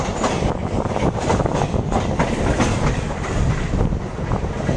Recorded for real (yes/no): yes